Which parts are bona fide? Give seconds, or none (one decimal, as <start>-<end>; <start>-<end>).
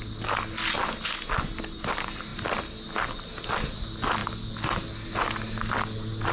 0.0-2.3; 2.9-6.3